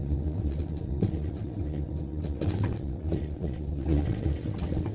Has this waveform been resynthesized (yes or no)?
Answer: yes